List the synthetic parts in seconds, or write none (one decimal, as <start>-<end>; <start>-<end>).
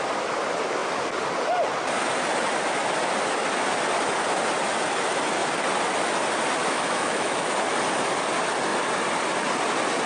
6.6-7.5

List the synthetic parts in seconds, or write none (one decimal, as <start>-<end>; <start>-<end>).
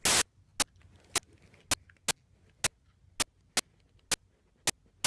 none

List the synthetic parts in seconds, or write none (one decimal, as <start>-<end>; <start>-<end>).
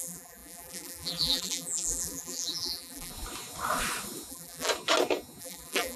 0.0-3.1; 4.3-4.7; 5.4-6.0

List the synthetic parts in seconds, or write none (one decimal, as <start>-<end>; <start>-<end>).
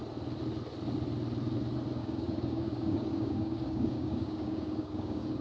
2.0-5.4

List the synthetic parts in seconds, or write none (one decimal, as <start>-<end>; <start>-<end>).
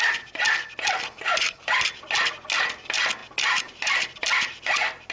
3.2-5.1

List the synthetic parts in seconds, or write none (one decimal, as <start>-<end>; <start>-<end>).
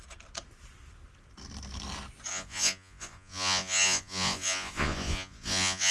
2.3-5.9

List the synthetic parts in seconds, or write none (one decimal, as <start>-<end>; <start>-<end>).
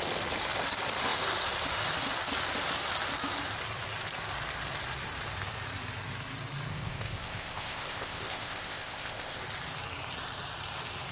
6.7-9.4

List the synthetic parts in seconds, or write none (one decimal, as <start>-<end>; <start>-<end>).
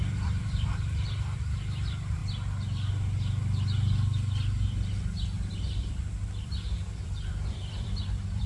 0.0-2.2; 5.6-8.5